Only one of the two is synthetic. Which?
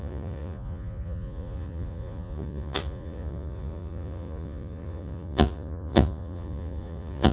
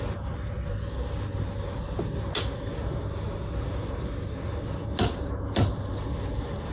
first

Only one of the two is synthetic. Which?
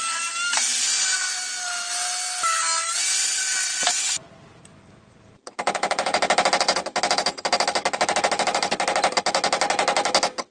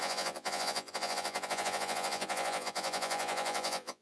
second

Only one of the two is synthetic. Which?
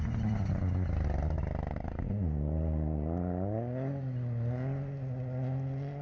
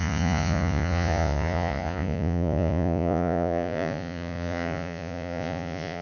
second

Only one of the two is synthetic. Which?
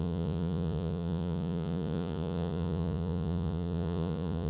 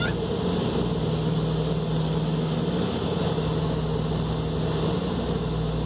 first